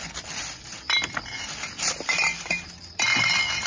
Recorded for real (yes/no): yes